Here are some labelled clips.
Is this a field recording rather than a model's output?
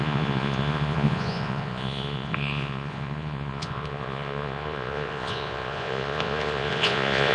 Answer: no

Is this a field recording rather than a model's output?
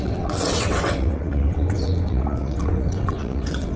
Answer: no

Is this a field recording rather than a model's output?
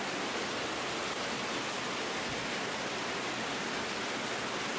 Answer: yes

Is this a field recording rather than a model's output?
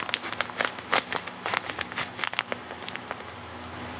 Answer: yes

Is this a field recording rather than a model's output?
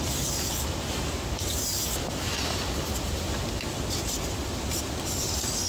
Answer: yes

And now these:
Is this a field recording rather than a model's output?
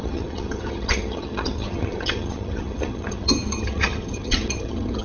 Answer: no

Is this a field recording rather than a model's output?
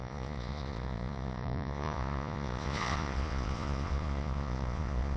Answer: no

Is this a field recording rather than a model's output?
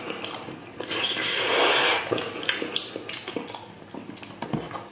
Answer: yes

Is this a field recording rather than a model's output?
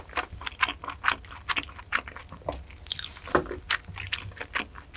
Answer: yes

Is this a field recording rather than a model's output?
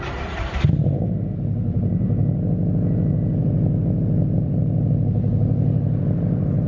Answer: no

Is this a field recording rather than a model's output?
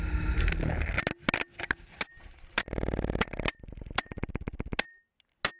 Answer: yes